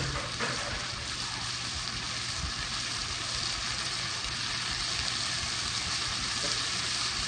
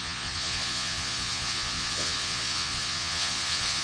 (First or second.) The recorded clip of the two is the first